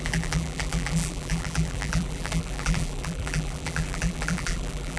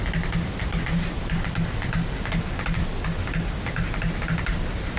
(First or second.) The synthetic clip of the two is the first